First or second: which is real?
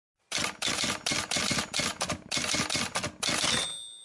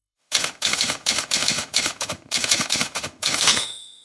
first